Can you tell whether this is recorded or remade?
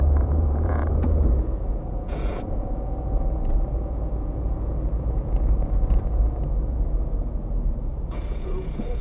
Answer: remade